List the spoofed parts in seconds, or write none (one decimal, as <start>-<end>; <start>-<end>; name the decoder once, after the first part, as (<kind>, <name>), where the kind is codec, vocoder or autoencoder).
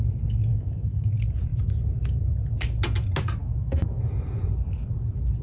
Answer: 0.5-1.1 (autoencoder, DAC-VAE); 3.4-4.0